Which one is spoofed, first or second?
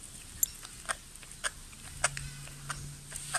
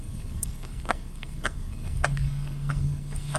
second